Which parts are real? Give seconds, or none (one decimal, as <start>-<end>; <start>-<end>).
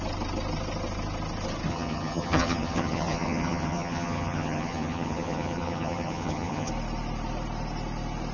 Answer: 0.0-1.7; 6.7-8.3